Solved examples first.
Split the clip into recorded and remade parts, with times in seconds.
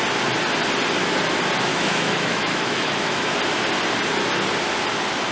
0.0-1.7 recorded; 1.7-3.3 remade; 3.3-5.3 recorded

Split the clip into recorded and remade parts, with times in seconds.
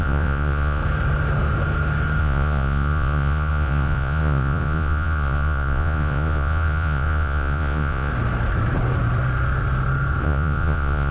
0.0-0.8 remade; 0.8-2.2 recorded; 2.2-8.1 remade; 8.1-10.2 recorded; 10.2-11.1 remade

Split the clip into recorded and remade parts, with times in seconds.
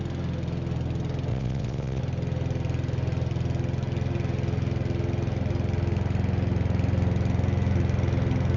0.0-1.3 recorded; 1.3-2.0 remade; 2.0-8.6 recorded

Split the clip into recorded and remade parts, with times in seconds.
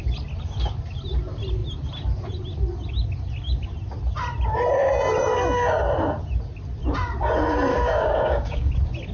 0.0-7.7 recorded; 7.7-8.7 remade; 8.7-9.1 recorded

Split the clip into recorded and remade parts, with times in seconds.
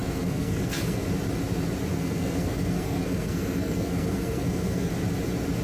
0.0-1.0 remade; 1.0-1.9 recorded; 1.9-4.9 remade; 4.9-5.6 recorded